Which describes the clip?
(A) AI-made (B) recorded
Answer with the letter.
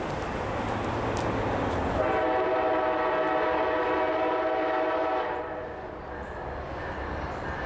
B